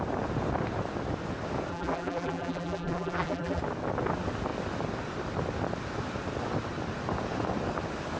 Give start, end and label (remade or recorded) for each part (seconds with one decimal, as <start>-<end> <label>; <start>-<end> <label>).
0.0-1.7 recorded; 1.7-3.6 remade; 3.6-8.2 recorded